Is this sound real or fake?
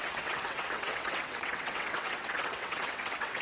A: fake